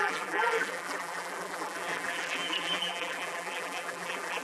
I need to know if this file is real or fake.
fake